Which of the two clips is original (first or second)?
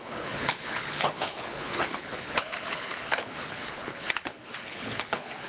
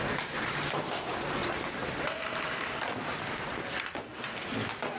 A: second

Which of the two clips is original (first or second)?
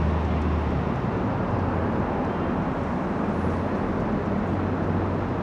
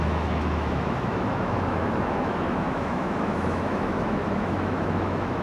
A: first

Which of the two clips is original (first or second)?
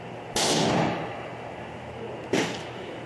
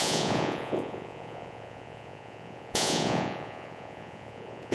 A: first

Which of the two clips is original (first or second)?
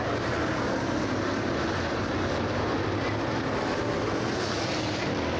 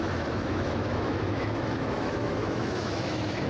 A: first